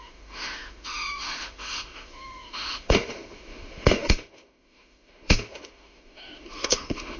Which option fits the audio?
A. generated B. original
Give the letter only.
A